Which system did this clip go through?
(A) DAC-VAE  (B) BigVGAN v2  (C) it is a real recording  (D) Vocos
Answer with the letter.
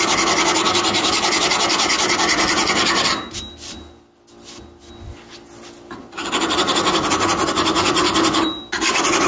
C